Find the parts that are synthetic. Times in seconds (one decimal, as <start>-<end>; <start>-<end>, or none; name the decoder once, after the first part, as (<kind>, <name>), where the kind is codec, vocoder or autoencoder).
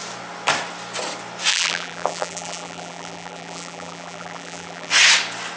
1.5-4.9 (vocoder, BigVGAN v2)